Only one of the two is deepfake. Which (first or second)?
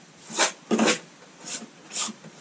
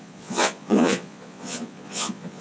second